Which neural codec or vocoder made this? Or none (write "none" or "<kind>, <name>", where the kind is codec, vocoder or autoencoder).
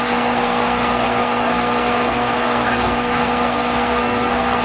codec, SNAC